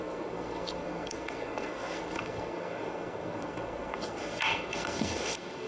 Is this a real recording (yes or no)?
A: no